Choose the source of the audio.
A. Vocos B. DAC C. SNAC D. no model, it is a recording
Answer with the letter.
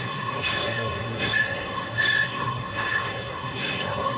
C